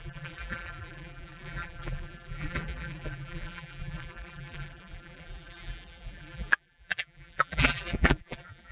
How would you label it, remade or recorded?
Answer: remade